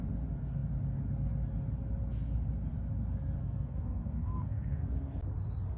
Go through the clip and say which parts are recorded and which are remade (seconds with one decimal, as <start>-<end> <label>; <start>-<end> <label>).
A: 0.0-3.4 recorded; 3.4-5.2 remade; 5.2-5.8 recorded